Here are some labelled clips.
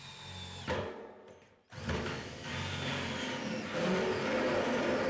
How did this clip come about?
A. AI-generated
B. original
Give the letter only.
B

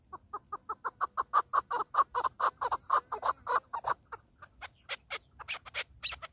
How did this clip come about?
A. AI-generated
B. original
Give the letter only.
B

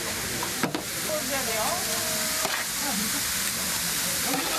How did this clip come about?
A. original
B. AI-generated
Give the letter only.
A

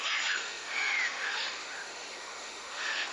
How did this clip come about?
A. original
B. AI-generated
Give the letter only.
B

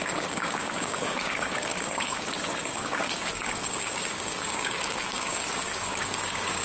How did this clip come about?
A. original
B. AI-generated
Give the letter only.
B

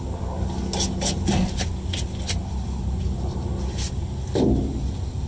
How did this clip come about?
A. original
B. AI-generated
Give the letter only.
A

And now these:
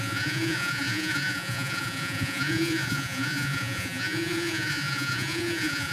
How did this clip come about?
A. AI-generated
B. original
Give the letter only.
A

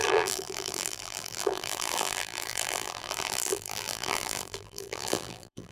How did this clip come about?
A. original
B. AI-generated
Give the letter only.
B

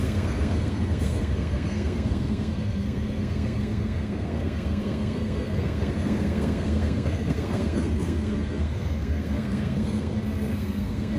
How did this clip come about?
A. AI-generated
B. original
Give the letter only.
A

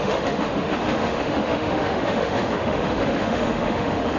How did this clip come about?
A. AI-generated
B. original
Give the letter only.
A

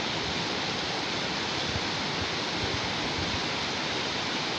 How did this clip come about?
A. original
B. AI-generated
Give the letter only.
A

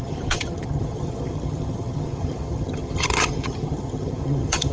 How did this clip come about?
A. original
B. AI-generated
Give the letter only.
B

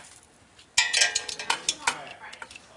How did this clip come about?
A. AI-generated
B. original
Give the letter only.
B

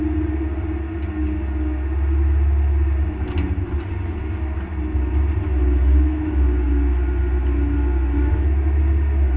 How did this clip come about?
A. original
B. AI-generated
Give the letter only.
A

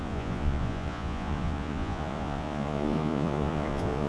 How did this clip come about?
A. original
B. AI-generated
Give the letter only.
B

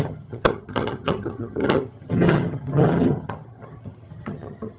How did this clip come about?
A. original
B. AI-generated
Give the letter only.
B